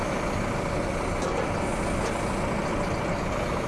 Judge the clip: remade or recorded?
remade